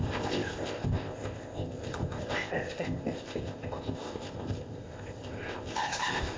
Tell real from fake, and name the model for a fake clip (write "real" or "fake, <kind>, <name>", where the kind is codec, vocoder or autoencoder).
fake, codec, ZipCodec